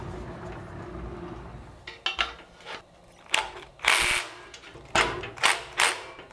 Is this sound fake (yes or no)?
no